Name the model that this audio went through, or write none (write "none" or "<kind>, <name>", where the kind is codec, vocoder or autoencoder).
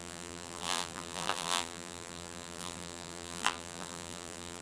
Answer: vocoder, BigVGAN v2